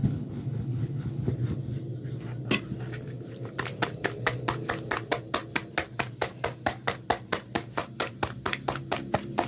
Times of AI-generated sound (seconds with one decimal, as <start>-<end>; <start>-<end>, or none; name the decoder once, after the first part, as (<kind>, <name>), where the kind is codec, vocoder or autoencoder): 0.0-1.3 (codec, HILCodec)